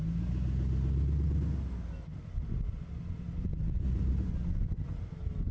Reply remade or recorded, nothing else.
recorded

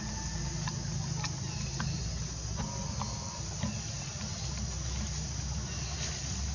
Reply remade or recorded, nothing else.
recorded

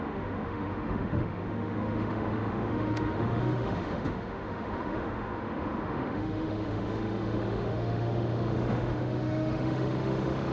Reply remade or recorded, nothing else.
remade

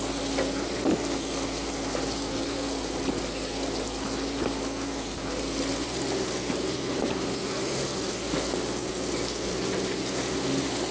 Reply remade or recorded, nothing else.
recorded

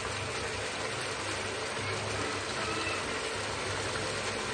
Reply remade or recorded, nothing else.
recorded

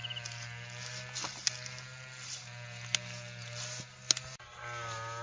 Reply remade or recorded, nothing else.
recorded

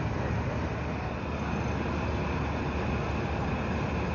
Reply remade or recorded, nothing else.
recorded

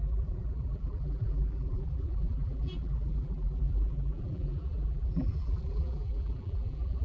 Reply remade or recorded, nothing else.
remade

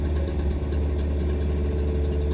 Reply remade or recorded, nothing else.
recorded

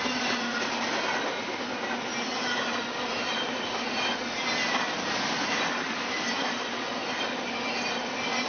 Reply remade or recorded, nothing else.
recorded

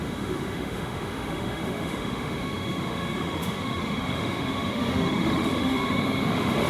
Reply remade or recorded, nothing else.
remade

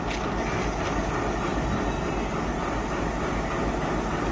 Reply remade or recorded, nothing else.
recorded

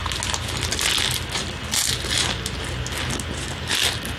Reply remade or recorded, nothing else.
recorded